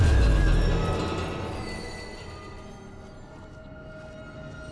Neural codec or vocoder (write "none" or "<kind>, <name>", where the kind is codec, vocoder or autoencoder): none